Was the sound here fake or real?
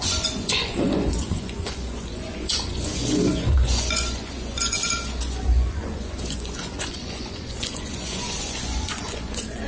fake